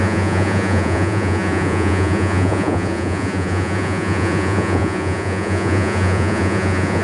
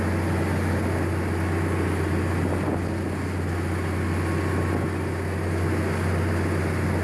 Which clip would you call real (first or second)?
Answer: second